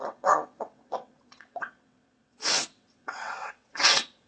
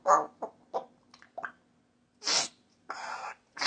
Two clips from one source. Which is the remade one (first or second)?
first